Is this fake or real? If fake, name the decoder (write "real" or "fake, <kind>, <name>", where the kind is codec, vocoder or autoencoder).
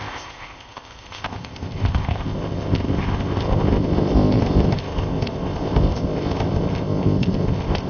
fake, codec, ZipCodec